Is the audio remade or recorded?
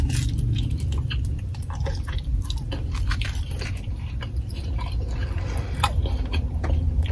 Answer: remade